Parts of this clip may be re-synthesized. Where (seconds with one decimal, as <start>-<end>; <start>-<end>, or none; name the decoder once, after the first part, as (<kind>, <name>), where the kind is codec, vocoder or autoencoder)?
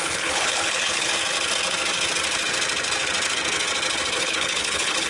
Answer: 0.0-1.1 (codec, HILCodec); 4.2-5.1